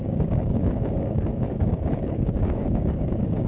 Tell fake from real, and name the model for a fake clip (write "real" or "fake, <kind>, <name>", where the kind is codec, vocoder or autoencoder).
fake, codec, DAC